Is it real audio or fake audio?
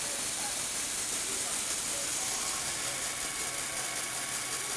real